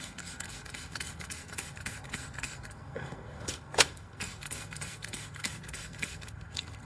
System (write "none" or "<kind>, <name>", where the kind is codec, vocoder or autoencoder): codec, SNAC